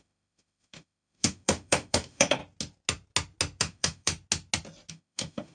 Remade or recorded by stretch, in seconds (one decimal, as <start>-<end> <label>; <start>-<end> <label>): 0.0-2.4 remade; 2.4-3.6 recorded; 3.6-4.1 remade; 4.1-4.9 recorded; 4.9-5.5 remade